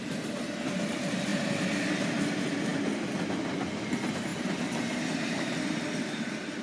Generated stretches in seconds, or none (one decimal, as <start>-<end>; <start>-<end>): none